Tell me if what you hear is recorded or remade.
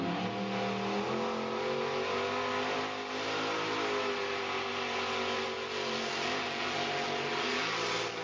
recorded